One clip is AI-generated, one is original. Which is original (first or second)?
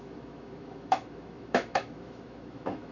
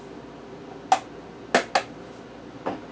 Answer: second